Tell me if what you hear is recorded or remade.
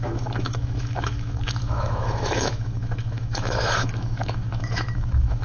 remade